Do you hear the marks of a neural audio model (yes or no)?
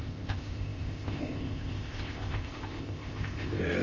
yes